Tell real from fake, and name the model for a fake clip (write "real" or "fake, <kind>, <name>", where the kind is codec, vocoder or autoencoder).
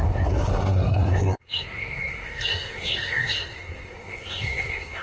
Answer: fake, codec, SNAC